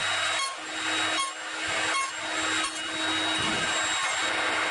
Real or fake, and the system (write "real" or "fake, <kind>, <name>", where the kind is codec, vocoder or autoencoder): real